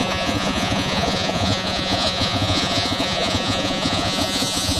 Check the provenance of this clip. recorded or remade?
remade